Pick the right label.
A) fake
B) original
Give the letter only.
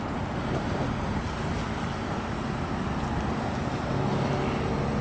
B